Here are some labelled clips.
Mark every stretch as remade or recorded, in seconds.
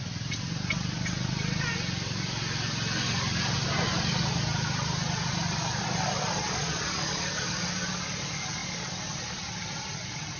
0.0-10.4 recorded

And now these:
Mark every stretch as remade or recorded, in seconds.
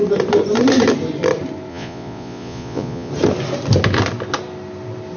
0.0-1.7 recorded; 1.7-3.1 remade; 3.1-5.2 recorded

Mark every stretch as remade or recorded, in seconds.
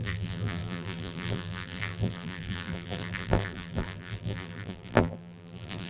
0.0-5.9 remade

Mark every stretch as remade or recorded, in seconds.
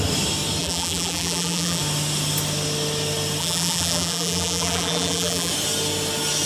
0.0-0.6 recorded; 0.6-1.8 remade; 1.8-3.4 recorded; 3.4-5.5 remade; 5.5-6.5 recorded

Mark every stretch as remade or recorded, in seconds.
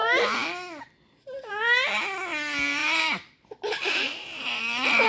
0.0-2.8 recorded; 2.8-4.5 remade; 4.5-5.1 recorded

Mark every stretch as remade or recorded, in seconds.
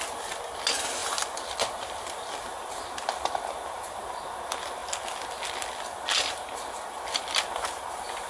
0.0-8.3 recorded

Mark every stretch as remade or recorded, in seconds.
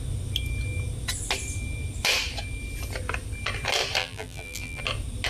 0.0-4.0 recorded; 4.0-4.8 remade; 4.8-5.3 recorded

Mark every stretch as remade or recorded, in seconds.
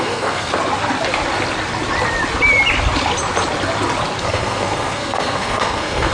0.0-0.5 remade; 0.5-4.2 recorded; 4.2-6.1 remade